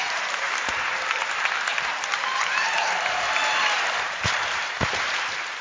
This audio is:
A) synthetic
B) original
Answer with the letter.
A